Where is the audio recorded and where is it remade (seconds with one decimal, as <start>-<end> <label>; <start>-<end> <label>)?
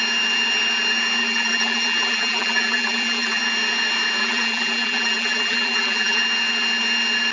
0.0-1.2 recorded; 1.2-3.4 remade; 3.4-4.2 recorded; 4.2-6.2 remade; 6.2-7.3 recorded